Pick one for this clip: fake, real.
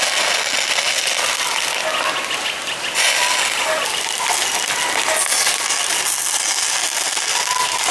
real